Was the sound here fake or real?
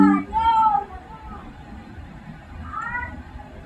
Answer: fake